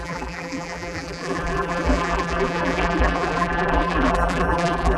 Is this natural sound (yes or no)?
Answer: no